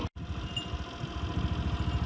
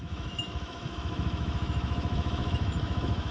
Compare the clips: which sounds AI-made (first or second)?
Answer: second